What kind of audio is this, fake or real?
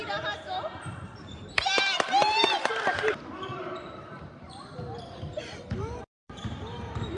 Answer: fake